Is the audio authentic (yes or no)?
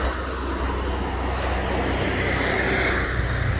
yes